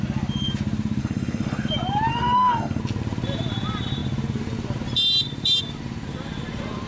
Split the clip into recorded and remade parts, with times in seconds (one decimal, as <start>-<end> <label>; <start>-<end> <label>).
0.0-1.0 recorded; 1.0-1.7 remade; 1.7-2.1 recorded; 2.1-2.8 remade; 2.8-6.9 recorded